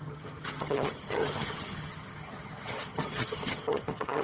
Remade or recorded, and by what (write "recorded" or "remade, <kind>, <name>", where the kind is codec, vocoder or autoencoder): remade, vocoder, HiFi-GAN